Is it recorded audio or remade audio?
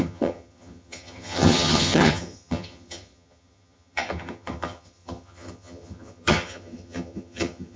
remade